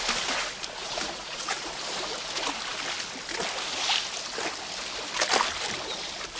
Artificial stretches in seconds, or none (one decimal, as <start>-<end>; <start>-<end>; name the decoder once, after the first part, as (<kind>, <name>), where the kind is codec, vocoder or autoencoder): 0.8-1.8 (vocoder, Vocos)